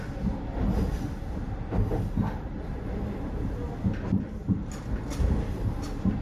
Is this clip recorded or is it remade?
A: recorded